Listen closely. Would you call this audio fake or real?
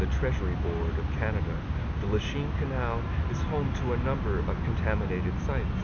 real